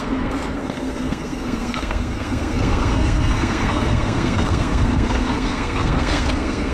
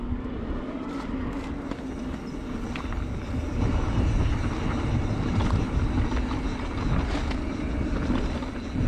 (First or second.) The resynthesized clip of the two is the first